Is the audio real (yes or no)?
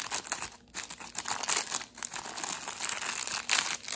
yes